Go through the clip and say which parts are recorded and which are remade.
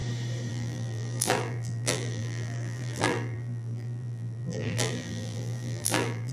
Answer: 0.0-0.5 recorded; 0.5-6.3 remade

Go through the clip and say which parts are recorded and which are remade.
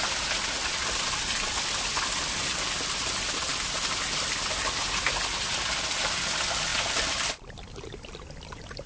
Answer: 0.0-8.9 recorded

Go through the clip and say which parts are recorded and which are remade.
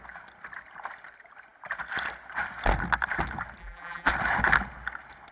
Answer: 0.0-3.6 recorded; 3.6-4.1 remade; 4.1-5.3 recorded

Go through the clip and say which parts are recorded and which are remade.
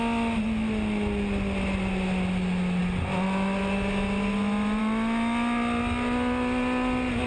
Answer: 0.0-7.3 recorded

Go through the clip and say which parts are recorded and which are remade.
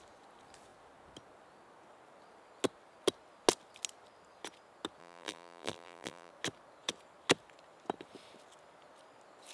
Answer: 0.0-5.0 recorded; 5.0-6.3 remade; 6.3-9.5 recorded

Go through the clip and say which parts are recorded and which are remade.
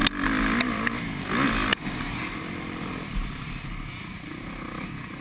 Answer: 0.0-1.7 recorded; 1.7-3.7 remade; 3.7-5.2 recorded